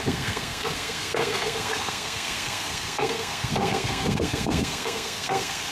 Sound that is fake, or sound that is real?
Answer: fake